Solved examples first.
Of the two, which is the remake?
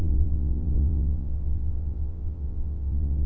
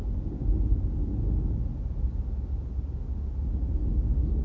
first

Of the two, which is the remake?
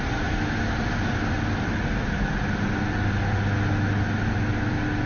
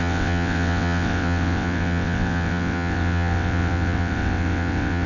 second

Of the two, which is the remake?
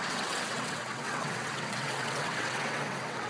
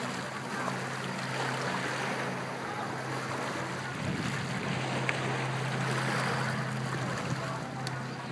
first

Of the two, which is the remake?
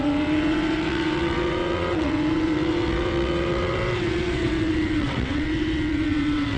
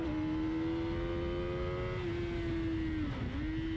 first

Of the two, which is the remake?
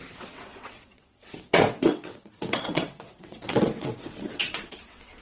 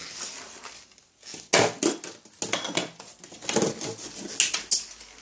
first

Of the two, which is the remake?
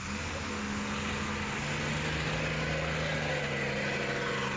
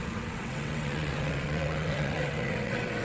second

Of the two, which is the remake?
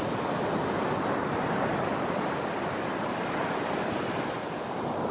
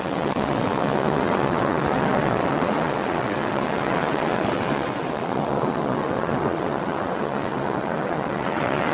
second